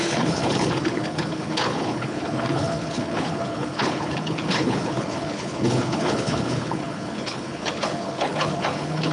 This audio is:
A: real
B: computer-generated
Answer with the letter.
B